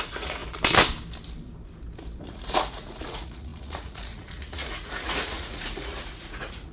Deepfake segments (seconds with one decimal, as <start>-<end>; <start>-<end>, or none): 0.0-0.4; 2.2-6.7